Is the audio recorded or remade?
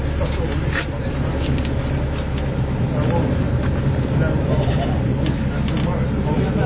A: recorded